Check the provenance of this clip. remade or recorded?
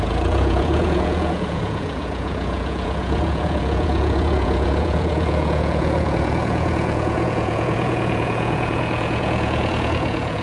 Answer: remade